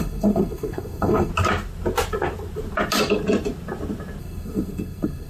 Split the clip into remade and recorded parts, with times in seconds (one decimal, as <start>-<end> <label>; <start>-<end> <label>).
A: 0.0-1.3 remade; 1.3-4.2 recorded; 4.2-5.3 remade